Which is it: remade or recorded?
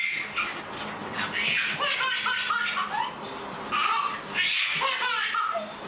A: recorded